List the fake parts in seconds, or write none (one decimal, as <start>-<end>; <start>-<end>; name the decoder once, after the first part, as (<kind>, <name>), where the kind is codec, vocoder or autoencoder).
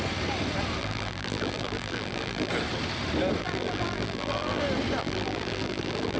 0.8-2.5 (vocoder, BigVGAN v2); 3.4-4.6; 5.0-6.2